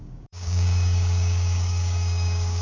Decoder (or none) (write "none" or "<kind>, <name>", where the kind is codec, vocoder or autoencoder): codec, DAC